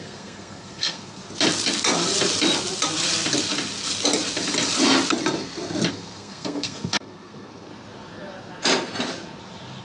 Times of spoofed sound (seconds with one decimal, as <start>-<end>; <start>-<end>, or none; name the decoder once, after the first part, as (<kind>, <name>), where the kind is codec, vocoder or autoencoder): 0.0-1.2 (codec, SNAC); 5.9-7.7